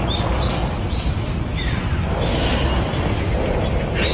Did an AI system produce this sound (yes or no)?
no